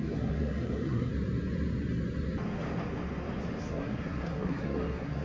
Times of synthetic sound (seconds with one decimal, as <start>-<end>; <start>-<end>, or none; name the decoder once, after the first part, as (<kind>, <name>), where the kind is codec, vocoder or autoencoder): 0.0-1.1 (codec, SNAC); 3.6-5.2